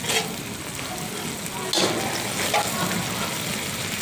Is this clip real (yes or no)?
yes